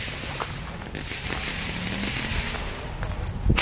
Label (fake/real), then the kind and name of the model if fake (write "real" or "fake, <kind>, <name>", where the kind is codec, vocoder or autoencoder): real